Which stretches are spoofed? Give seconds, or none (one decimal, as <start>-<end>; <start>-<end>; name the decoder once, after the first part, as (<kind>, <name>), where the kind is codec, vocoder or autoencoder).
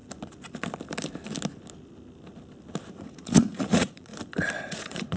2.9-4.1 (vocoder, Vocos); 4.6-5.2